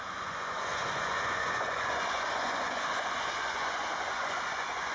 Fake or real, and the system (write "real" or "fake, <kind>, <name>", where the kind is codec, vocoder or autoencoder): fake, vocoder, Vocos